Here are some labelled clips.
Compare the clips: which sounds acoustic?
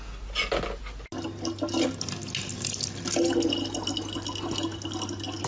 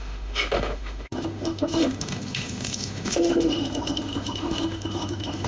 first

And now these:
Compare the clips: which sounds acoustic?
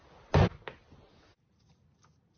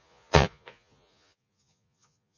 first